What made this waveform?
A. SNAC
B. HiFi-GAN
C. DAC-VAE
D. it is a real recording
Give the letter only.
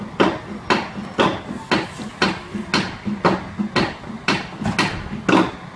D